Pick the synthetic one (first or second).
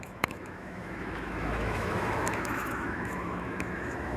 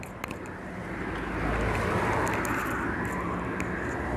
first